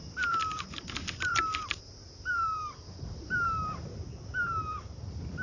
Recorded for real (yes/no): yes